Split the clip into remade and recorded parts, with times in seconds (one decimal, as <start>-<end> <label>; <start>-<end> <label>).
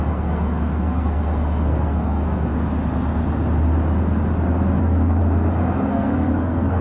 0.0-2.5 remade; 2.5-4.8 recorded; 4.8-5.2 remade; 5.2-5.9 recorded; 5.9-6.8 remade